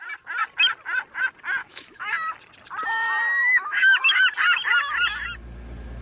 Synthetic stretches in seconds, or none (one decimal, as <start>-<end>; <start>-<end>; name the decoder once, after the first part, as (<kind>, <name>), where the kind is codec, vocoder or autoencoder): 1.6-2.1 (autoencoder, DAC-VAE); 3.4-4.2